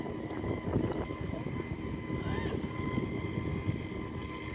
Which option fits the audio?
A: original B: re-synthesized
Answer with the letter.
A